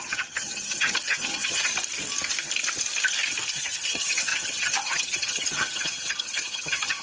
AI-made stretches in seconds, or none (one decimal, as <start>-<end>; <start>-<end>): 0.0-1.7; 3.5-7.0